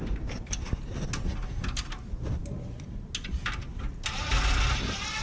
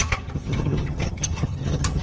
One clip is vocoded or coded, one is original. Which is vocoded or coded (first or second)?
second